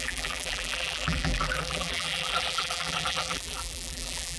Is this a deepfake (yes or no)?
yes